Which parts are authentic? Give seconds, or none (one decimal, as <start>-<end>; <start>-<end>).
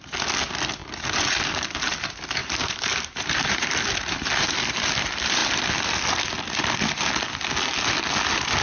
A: 0.0-2.4; 3.7-8.6